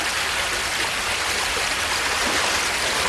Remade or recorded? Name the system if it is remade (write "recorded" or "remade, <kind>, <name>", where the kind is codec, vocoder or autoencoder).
recorded